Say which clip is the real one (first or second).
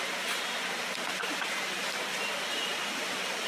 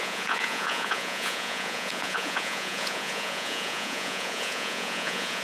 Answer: first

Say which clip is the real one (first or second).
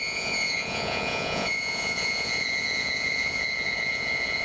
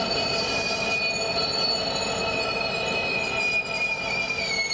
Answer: second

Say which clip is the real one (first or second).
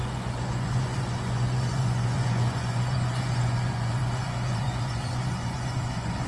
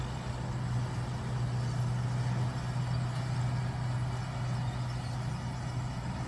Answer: second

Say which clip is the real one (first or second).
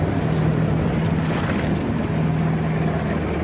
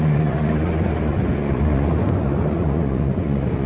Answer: first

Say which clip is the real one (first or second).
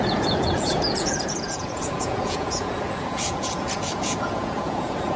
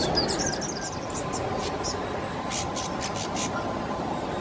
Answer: second